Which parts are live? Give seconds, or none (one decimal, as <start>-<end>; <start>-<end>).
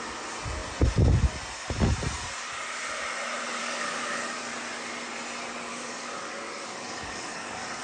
0.0-3.6; 4.4-5.7